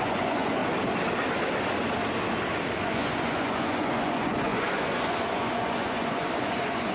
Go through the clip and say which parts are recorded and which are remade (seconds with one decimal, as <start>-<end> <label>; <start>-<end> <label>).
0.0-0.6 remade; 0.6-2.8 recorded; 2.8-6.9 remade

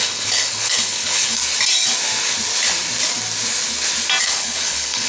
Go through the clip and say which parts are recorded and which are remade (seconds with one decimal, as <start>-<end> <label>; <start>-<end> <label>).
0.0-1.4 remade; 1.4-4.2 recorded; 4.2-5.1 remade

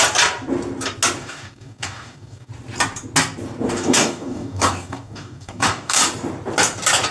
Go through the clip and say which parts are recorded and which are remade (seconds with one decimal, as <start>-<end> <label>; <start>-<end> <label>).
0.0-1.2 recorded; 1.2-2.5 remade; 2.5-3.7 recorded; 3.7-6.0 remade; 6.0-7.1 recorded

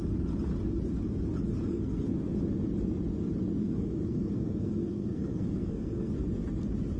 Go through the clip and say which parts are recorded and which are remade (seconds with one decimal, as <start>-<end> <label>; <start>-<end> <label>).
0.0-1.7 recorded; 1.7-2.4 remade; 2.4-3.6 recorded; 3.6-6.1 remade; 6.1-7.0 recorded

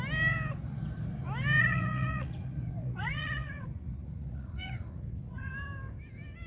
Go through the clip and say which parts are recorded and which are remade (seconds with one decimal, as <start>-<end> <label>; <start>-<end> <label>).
0.0-1.6 recorded; 1.6-5.5 remade; 5.5-6.5 recorded